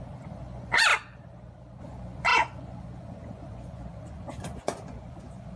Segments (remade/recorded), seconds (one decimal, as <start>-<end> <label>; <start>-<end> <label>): 0.0-0.9 remade; 0.9-1.8 recorded; 1.8-5.6 remade